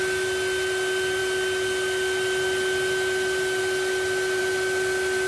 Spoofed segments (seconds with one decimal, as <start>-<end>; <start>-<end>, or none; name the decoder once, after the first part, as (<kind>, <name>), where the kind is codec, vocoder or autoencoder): none